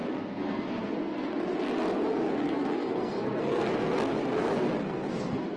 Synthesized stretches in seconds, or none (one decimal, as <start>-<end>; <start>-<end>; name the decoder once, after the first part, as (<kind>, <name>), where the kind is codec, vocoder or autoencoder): 0.0-1.3 (codec, SNAC); 2.1-5.6

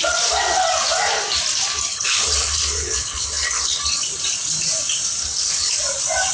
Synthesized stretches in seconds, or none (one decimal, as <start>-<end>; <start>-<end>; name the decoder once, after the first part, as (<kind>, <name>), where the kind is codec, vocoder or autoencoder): 1.9-3.8 (codec, HILCodec); 5.2-5.8

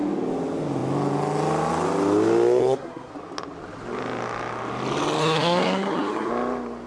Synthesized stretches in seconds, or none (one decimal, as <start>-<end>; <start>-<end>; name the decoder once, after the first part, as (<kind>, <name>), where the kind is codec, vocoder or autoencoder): 2.6-3.1 (codec, SNAC); 5.2-6.3

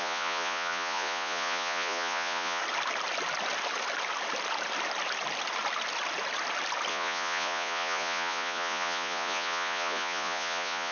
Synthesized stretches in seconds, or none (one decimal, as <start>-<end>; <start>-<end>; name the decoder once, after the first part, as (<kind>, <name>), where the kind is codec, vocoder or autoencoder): 0.0-2.6 (vocoder, Vocos); 6.9-10.9

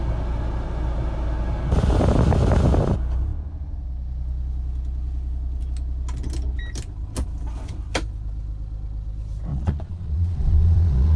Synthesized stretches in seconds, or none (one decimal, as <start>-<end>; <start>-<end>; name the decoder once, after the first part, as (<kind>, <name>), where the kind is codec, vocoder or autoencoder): 9.5-11.2 (vocoder, Vocos)